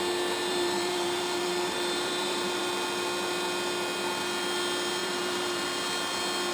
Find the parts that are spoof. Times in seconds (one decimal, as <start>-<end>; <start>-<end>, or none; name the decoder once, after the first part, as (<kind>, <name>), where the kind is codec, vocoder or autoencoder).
0.5-2.6 (vocoder, BigVGAN v2); 5.0-5.6